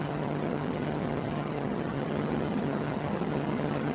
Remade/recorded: remade